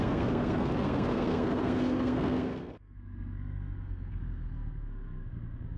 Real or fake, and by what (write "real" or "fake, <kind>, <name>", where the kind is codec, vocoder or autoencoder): fake, codec, SNAC